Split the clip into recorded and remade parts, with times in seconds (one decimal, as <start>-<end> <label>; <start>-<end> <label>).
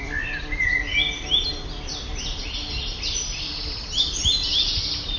0.0-5.2 recorded